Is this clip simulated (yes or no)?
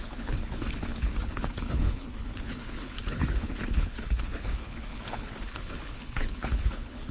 yes